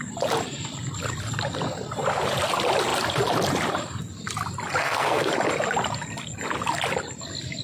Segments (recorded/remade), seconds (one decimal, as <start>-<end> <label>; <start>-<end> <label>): 0.0-4.8 recorded; 4.8-5.3 remade; 5.3-7.6 recorded